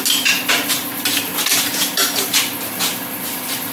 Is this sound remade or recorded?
recorded